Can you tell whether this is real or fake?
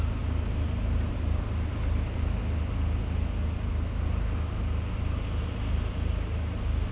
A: real